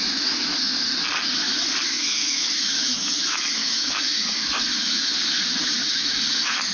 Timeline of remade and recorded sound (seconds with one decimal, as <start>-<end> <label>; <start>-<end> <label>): 0.0-0.9 remade; 0.9-1.9 recorded; 1.9-5.1 remade; 5.1-5.6 recorded; 5.6-6.7 remade